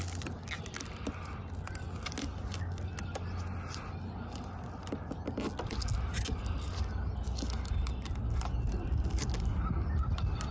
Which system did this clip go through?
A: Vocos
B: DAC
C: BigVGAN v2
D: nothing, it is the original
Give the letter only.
D